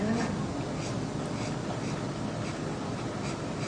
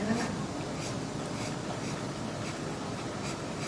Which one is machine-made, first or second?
second